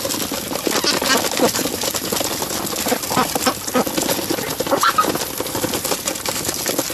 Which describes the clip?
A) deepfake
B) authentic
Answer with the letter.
B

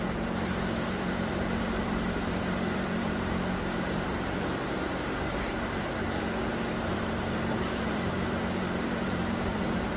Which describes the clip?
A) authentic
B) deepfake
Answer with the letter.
B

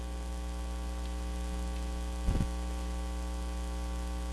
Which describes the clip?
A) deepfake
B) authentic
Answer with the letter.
B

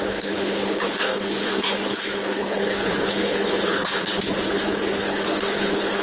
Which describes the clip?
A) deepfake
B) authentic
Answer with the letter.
A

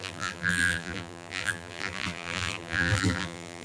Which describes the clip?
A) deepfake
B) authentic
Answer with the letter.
A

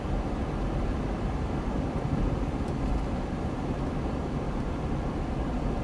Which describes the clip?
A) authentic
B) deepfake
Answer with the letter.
B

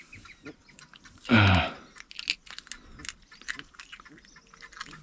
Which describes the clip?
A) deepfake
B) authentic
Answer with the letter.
B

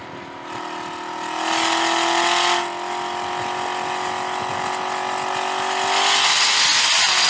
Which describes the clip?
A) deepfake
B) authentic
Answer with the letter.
B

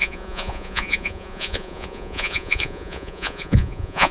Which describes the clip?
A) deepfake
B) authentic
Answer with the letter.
A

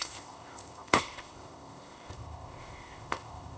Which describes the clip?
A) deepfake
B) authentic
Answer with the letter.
A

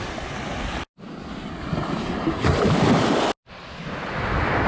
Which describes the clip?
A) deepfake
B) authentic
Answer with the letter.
B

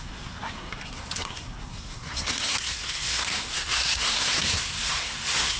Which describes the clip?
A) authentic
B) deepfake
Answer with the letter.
B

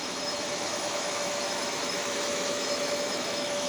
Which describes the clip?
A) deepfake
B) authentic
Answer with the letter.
A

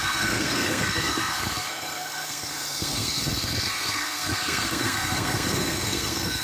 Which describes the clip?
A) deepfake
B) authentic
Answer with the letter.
A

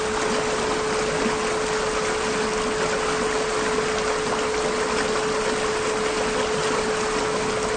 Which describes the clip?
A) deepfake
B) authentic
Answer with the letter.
B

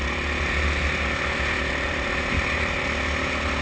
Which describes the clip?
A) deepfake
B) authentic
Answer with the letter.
B